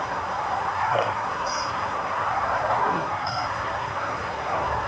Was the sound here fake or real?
fake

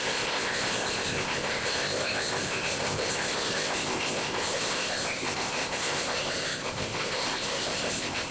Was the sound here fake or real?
fake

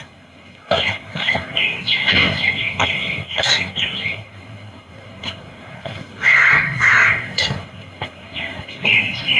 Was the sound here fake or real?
fake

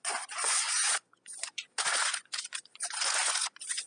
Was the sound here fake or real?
fake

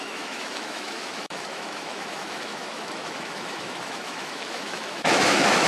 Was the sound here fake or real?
fake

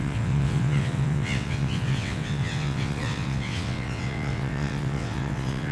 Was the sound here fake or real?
fake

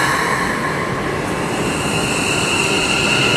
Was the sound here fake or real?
real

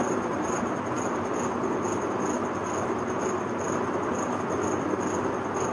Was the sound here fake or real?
real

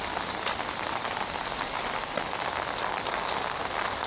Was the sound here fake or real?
real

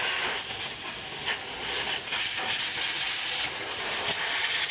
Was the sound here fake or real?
fake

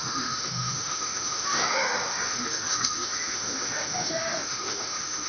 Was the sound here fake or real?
fake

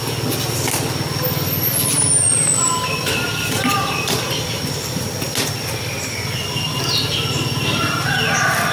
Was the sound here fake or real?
real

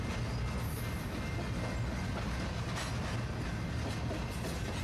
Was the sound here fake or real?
real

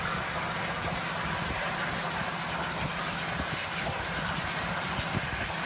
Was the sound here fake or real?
real